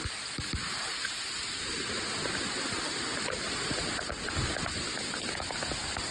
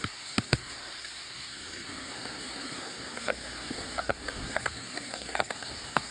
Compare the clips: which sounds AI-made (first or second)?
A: second